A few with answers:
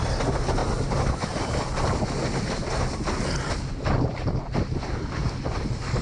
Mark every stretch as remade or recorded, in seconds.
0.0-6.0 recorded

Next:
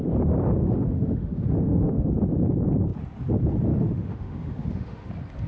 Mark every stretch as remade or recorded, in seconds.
0.0-0.6 recorded; 0.6-2.1 remade; 2.1-3.7 recorded; 3.7-5.1 remade; 5.1-5.5 recorded

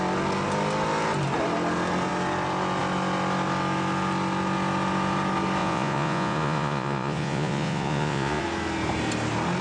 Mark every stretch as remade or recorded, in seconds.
0.0-5.6 recorded; 5.6-8.4 remade; 8.4-9.6 recorded

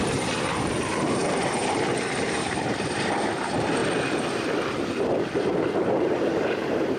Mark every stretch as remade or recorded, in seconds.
0.0-3.8 remade; 3.8-4.8 recorded; 4.8-7.0 remade

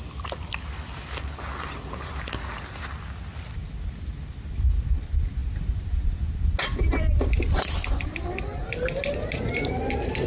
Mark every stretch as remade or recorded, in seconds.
0.0-10.3 recorded

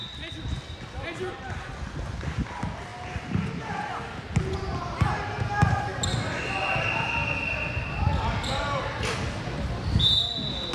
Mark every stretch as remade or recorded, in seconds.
0.0-10.7 recorded

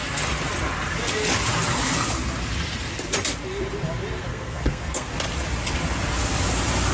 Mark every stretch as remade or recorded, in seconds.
0.0-4.3 recorded; 4.3-5.1 remade; 5.1-6.9 recorded

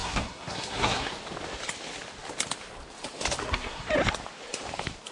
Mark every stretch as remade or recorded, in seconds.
0.0-1.1 remade; 1.1-3.4 recorded; 3.4-3.9 remade; 3.9-5.1 recorded